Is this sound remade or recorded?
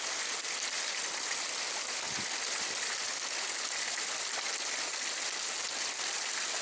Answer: recorded